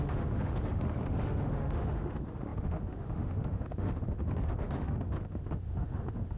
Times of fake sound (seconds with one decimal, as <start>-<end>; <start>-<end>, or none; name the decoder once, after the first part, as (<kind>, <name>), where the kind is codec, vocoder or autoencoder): 0.0-6.4 (autoencoder, DAC-VAE)